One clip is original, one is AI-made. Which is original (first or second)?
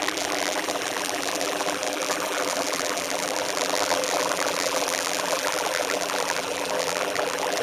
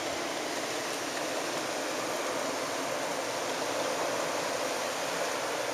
second